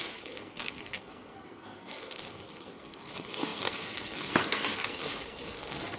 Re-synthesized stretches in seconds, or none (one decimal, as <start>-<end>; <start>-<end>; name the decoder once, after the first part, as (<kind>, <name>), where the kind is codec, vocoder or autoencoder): 0.0-6.0 (codec, SNAC)